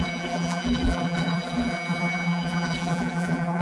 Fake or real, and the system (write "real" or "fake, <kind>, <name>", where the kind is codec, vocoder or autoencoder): fake, vocoder, BigVGAN v2